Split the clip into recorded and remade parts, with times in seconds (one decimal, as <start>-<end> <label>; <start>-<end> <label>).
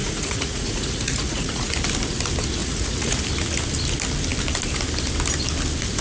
0.0-1.7 remade; 1.7-2.6 recorded; 2.6-3.2 remade; 3.2-6.0 recorded